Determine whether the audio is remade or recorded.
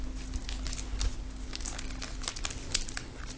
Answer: recorded